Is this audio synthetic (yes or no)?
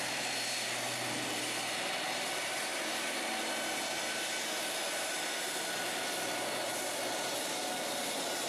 no